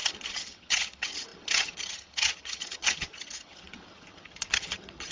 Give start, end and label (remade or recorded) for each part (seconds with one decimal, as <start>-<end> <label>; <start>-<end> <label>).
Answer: 0.0-5.1 remade